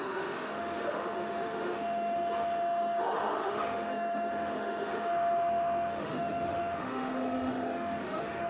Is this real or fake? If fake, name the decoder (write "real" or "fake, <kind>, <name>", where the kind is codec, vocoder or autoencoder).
fake, autoencoder, DAC-VAE